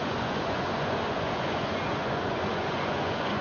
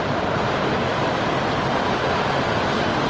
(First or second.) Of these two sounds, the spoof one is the first